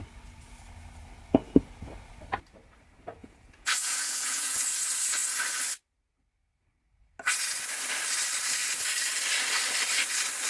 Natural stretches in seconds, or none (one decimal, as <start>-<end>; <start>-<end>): 0.0-3.2; 4.6-10.5